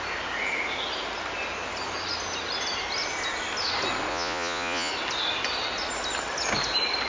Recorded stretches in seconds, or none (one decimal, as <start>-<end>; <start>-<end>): 0.0-4.1; 4.9-7.1

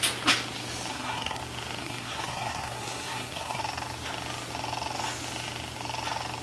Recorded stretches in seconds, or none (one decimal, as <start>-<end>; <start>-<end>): 0.0-0.9; 1.4-1.8; 3.6-6.4

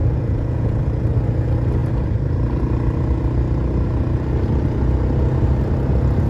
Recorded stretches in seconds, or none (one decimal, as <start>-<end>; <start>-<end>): 0.8-6.3

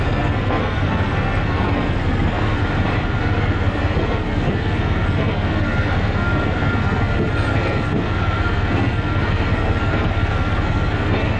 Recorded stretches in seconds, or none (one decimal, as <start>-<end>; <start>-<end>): 2.6-3.2